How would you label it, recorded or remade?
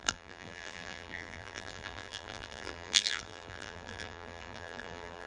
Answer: remade